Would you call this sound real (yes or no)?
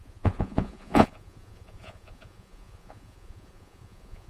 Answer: no